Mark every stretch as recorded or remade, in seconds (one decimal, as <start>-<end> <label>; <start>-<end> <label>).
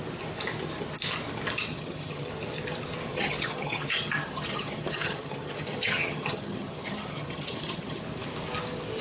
0.0-1.7 recorded; 1.7-2.3 remade; 2.3-3.1 recorded; 3.1-8.0 remade; 8.0-9.0 recorded